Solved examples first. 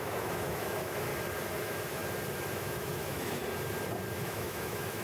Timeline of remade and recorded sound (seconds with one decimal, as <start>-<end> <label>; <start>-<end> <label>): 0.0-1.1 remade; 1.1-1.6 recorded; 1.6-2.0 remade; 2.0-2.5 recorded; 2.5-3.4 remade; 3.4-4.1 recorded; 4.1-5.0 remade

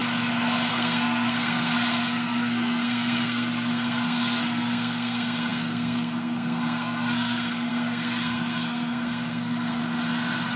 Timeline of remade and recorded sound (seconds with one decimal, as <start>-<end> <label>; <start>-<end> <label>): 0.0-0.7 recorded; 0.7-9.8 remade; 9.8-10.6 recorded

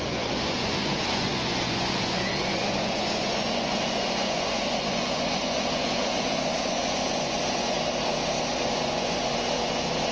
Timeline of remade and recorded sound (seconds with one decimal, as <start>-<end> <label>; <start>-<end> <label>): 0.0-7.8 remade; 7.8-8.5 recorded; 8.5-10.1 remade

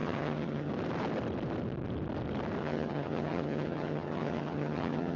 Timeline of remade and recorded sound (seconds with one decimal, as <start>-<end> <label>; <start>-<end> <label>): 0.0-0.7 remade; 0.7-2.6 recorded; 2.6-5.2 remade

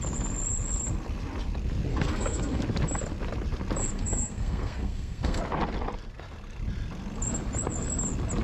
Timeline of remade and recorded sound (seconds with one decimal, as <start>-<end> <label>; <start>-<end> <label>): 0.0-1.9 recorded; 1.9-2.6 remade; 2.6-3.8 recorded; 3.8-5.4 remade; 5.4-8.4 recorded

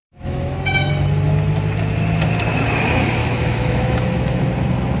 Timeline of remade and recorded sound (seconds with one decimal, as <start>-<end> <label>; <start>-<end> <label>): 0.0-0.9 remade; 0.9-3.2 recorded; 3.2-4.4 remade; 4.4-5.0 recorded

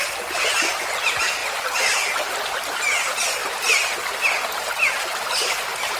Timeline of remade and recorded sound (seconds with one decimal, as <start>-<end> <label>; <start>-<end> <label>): 0.0-6.0 recorded

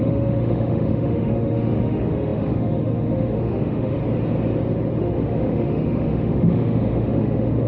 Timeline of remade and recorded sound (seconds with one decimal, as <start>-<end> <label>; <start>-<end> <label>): 0.0-4.0 remade; 4.0-5.0 recorded; 5.0-7.7 remade